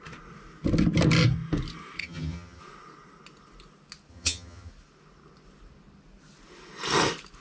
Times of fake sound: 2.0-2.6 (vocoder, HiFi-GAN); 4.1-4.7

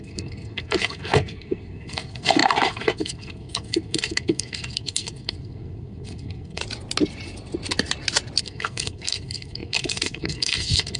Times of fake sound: 0.0-6.6 (codec, SNAC); 8.4-11.0

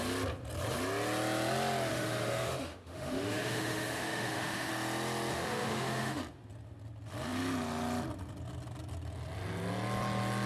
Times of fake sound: 1.9-4.7 (autoencoder, DAC-VAE); 5.3-6.2

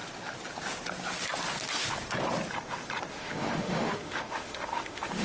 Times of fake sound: 3.1-5.2 (autoencoder, DAC-VAE)

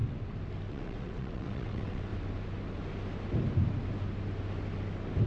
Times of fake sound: 0.7-2.1 (vocoder, WaveNeXt)

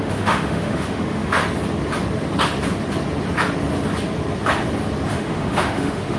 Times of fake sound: 0.0-1.4 (autoencoder, DAC-VAE); 5.1-6.2